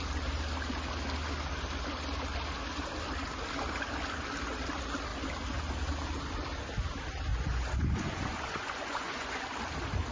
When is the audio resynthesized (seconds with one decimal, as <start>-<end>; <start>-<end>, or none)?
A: 7.3-9.4